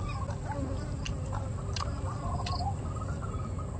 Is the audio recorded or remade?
recorded